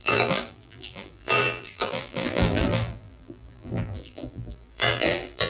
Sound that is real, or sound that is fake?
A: fake